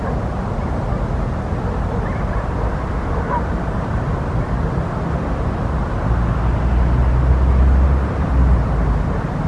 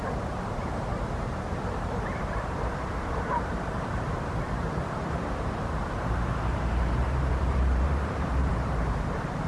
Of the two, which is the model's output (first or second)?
second